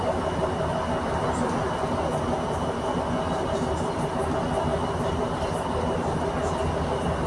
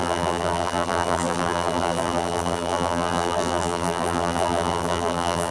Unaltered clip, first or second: first